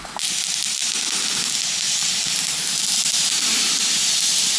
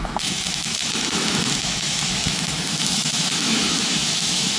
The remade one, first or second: second